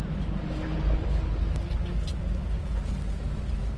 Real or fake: real